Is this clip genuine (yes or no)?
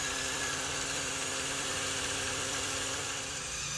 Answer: yes